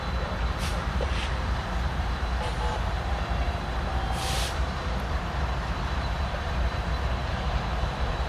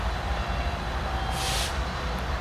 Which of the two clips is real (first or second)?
second